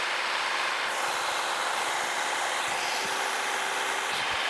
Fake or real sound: real